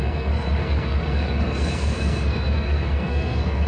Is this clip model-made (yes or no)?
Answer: yes